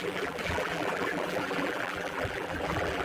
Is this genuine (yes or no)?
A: no